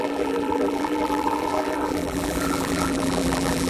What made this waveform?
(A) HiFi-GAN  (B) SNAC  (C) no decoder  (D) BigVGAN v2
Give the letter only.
D